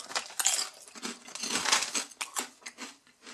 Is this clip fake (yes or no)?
no